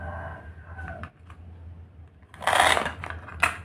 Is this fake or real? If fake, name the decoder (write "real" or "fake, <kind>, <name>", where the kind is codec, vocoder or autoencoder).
real